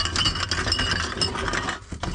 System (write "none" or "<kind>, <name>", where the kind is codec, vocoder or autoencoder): none